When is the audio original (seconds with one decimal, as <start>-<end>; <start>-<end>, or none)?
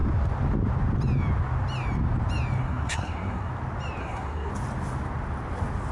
0.0-2.6; 3.5-4.0; 4.5-5.9